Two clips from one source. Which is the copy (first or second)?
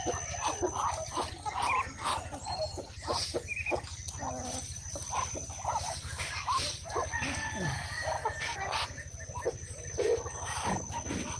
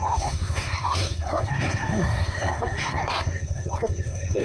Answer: second